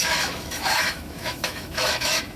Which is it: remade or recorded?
remade